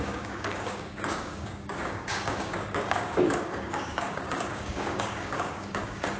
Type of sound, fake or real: fake